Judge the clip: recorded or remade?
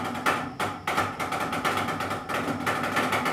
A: recorded